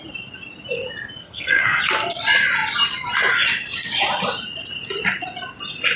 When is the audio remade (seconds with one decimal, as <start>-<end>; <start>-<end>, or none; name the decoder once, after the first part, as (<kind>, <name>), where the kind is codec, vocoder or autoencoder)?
1.2-1.8 (codec, SNAC)